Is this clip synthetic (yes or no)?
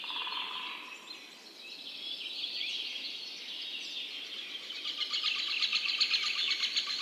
no